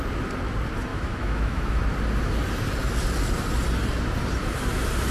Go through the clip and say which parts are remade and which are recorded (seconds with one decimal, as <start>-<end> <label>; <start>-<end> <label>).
0.0-0.9 recorded; 0.9-1.8 remade; 1.8-5.1 recorded